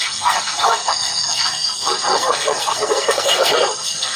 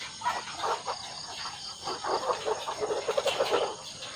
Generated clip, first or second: first